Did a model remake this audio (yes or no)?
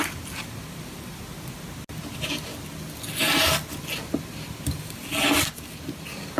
no